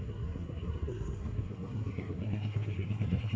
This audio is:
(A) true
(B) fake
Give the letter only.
B